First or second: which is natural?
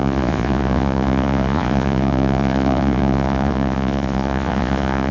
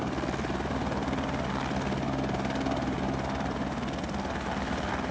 second